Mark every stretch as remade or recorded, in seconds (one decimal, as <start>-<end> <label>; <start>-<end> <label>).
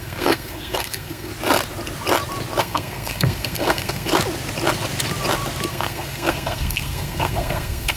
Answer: 0.0-1.3 remade; 1.3-2.6 recorded; 2.6-4.1 remade; 4.1-5.7 recorded; 5.7-8.0 remade